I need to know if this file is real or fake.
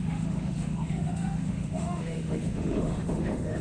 fake